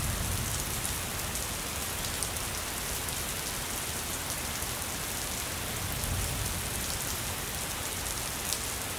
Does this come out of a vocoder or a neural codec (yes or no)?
no